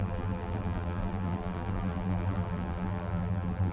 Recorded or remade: remade